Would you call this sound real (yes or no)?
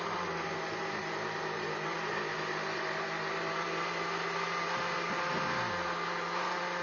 yes